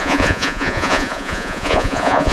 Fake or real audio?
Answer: fake